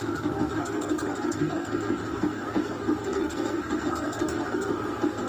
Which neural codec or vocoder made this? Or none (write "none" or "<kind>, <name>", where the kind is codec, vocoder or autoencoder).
codec, SNAC